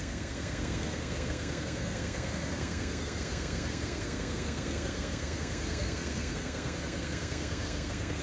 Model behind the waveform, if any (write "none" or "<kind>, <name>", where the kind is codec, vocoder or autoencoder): codec, SNAC